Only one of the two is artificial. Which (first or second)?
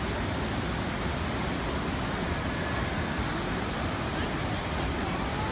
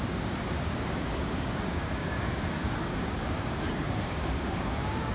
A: second